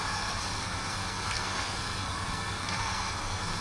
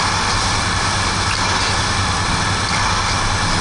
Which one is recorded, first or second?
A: second